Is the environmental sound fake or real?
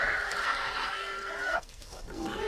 fake